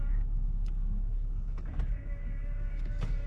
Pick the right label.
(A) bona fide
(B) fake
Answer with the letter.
B